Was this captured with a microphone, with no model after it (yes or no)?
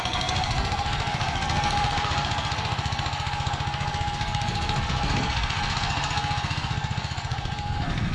no